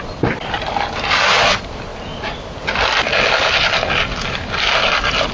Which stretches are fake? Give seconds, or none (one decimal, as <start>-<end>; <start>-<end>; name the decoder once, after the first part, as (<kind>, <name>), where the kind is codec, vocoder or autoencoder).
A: none